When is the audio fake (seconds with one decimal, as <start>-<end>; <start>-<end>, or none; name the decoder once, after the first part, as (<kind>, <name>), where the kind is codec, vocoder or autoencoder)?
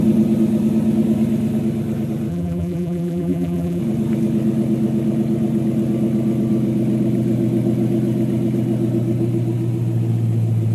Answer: 2.3-3.8 (vocoder, BigVGAN v2)